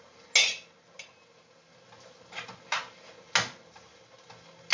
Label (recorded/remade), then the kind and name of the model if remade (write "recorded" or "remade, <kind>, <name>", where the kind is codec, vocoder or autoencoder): recorded